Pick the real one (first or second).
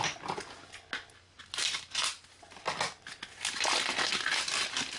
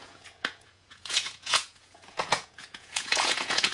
first